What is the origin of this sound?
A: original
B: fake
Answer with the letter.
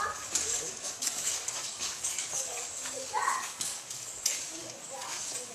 B